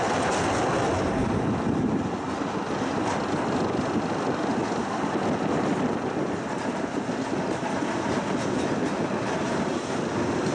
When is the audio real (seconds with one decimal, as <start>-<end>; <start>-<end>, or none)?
0.0-10.5